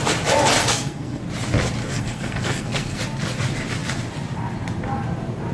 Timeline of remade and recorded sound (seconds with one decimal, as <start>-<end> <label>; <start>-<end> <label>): 0.0-0.6 recorded; 0.6-1.2 remade; 1.2-1.8 recorded; 1.8-3.0 remade; 3.0-5.5 recorded

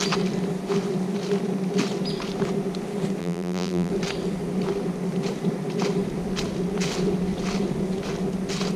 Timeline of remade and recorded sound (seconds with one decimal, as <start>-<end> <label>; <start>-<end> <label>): 0.0-3.2 recorded; 3.2-3.9 remade; 3.9-8.8 recorded

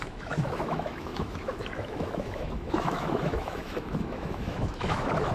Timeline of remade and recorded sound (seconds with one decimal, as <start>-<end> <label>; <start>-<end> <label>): 0.0-5.3 remade

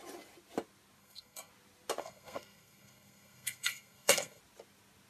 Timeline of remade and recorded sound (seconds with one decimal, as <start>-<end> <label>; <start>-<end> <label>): 0.0-1.0 recorded; 1.0-1.5 remade; 1.5-2.0 recorded; 2.0-4.4 remade; 4.4-5.1 recorded

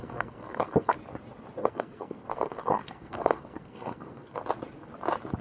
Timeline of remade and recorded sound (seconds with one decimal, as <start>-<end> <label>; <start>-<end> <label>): 0.0-0.9 remade; 0.9-1.6 recorded; 1.6-4.4 remade; 4.4-5.4 recorded

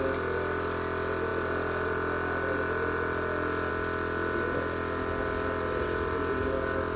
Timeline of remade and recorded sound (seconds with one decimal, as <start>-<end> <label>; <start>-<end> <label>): 0.0-7.0 recorded